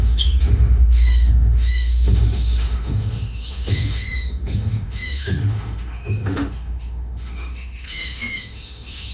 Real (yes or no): no